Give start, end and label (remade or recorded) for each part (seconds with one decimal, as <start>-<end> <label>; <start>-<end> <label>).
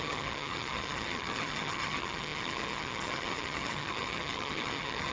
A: 0.0-5.1 remade